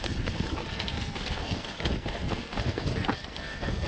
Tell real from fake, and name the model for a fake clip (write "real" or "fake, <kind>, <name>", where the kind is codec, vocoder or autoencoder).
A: fake, codec, SNAC